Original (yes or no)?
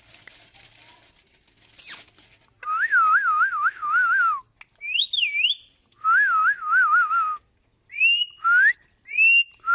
yes